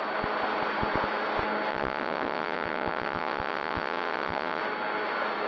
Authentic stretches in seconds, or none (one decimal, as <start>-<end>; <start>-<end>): 0.0-1.7; 4.6-5.5

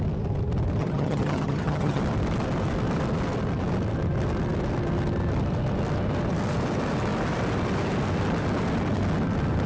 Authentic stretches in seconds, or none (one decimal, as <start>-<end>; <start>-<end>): 0.0-0.8; 2.0-9.7